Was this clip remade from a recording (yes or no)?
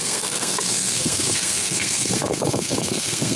yes